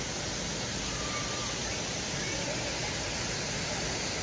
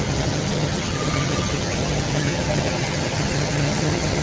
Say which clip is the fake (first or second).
second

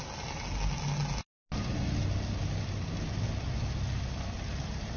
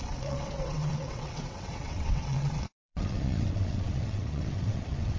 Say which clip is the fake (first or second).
second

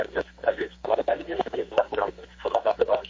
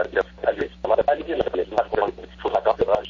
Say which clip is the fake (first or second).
first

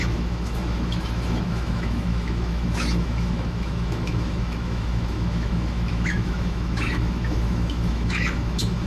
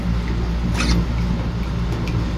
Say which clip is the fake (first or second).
first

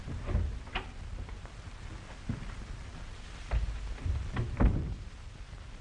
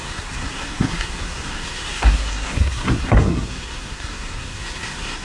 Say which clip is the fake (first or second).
second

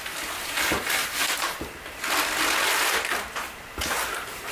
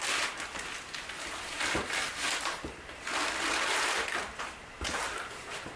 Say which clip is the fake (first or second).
second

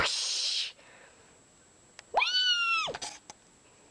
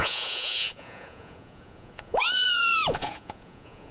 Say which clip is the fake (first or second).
second